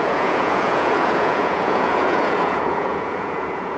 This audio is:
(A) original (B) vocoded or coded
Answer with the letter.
B